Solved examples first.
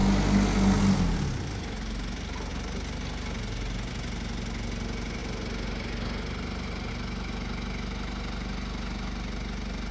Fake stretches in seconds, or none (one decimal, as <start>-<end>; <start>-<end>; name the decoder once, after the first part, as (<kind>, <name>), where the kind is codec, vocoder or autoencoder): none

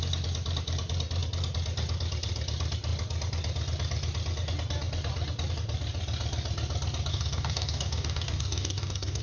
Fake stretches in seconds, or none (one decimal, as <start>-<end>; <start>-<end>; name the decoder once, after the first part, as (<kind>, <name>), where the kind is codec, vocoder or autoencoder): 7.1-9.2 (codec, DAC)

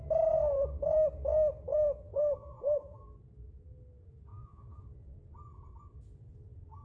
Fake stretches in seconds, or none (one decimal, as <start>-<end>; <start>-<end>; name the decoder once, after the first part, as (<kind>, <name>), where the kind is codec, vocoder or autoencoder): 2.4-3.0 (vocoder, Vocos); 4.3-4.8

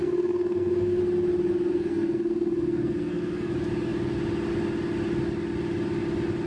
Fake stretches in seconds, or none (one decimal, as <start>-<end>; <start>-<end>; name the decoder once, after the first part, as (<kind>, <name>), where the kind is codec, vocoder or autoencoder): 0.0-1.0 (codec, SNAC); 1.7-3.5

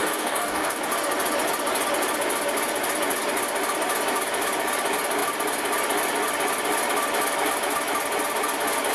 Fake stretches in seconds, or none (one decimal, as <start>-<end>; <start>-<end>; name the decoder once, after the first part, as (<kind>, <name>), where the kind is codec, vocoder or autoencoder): 0.0-0.8 (codec, DAC)

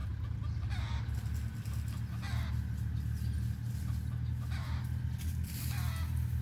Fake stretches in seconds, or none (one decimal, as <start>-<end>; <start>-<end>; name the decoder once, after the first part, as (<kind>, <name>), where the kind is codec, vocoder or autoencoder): none

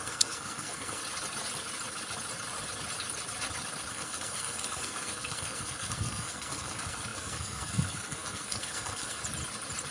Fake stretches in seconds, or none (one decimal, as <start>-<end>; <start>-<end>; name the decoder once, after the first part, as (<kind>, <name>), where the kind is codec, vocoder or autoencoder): 0.0-1.0 (codec, SNAC); 3.9-9.2

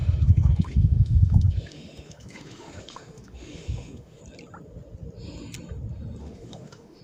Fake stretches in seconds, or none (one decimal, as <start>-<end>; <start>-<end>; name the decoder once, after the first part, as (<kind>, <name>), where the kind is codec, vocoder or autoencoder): 0.0-4.2 (autoencoder, DAC-VAE); 6.2-7.0